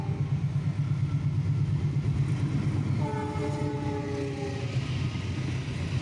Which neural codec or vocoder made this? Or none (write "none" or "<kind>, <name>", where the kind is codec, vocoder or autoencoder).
none